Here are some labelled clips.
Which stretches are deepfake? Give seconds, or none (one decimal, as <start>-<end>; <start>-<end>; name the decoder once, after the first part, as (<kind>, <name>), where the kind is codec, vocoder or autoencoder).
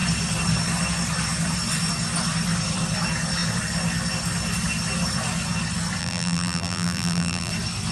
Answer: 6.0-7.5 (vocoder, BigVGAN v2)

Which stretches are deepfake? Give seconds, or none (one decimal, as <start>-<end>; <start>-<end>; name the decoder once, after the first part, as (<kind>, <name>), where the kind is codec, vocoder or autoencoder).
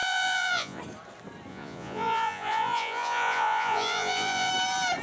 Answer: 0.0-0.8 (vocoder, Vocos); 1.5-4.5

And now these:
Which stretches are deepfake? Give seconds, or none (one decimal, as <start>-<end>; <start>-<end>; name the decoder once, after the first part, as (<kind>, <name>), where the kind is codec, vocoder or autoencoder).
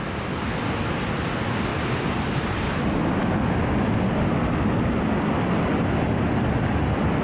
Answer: 1.7-2.7 (vocoder, BigVGAN v2)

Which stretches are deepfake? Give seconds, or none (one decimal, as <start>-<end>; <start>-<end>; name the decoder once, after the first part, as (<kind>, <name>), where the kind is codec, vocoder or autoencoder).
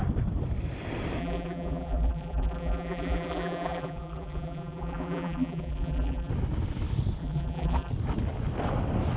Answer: 1.2-6.3 (vocoder, BigVGAN v2); 7.2-7.9